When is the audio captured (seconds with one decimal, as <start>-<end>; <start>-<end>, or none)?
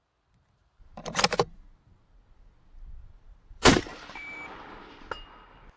0.0-0.6; 1.2-3.0; 5.1-5.8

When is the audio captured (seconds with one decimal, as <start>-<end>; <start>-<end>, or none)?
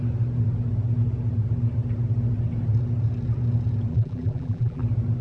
0.0-3.9; 4.8-5.2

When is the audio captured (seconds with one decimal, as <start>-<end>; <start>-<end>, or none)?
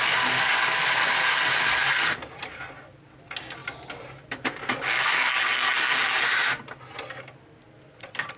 0.0-8.4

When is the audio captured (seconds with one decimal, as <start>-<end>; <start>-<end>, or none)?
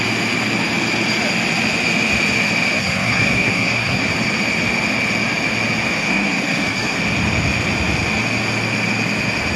0.0-2.8; 4.1-6.1; 7.0-9.6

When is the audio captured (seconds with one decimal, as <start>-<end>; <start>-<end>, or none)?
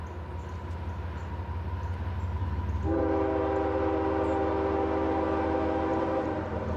0.0-2.4; 3.0-5.9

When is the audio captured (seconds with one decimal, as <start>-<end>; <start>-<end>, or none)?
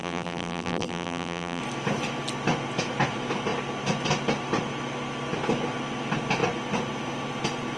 1.6-7.8